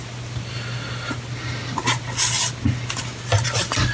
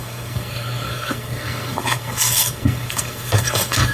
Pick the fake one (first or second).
second